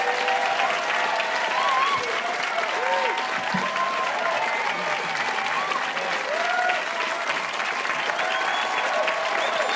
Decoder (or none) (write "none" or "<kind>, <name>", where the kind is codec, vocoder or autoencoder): none